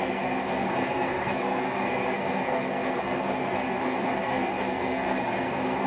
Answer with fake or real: fake